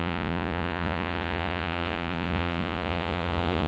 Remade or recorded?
remade